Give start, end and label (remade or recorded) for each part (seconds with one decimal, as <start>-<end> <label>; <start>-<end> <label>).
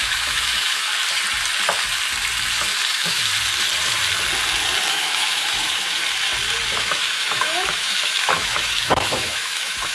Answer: 0.0-0.9 remade; 0.9-2.9 recorded; 2.9-3.3 remade; 3.3-4.9 recorded; 4.9-6.0 remade; 6.0-6.7 recorded; 6.7-9.9 remade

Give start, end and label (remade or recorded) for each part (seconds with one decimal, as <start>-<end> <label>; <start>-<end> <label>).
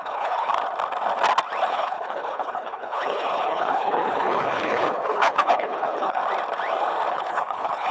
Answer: 0.0-0.5 remade; 0.5-1.7 recorded; 1.7-6.2 remade; 6.2-7.1 recorded; 7.1-7.9 remade